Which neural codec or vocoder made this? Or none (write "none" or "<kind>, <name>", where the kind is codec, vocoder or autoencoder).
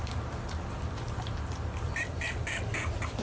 none